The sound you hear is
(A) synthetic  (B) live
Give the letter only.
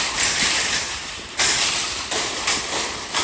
A